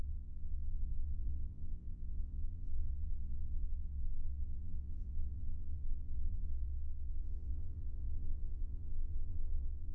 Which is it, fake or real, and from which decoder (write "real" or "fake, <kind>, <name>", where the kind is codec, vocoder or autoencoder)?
fake, vocoder, WaveNeXt